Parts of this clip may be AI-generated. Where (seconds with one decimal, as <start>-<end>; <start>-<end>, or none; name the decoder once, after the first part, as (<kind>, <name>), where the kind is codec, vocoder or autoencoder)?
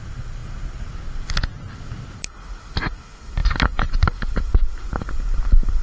none